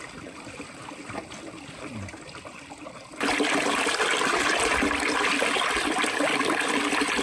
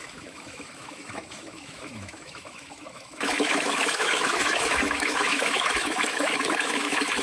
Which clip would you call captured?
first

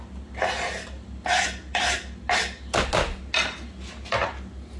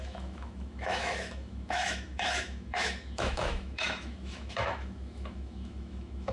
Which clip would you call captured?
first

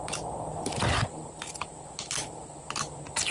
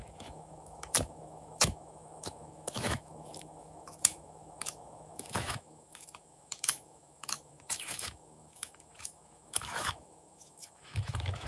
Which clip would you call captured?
first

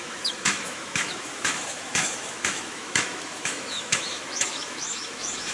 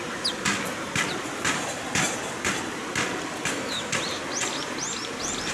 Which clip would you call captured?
second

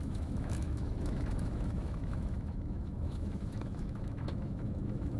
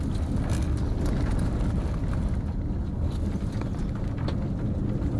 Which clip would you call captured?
second